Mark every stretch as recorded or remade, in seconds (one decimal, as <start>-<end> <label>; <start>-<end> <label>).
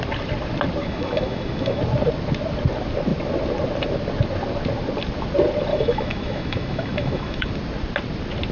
0.0-0.8 recorded; 0.8-1.8 remade; 1.8-5.7 recorded; 5.7-7.5 remade; 7.5-8.5 recorded